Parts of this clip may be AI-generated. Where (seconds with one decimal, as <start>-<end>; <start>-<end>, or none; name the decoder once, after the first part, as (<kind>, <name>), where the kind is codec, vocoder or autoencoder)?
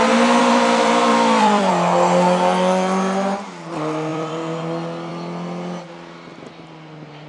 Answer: 0.4-1.7 (vocoder, BigVGAN v2); 4.1-4.6